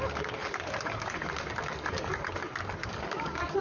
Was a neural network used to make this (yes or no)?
yes